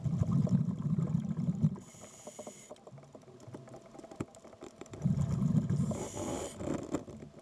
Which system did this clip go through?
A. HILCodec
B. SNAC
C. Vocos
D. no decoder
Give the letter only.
D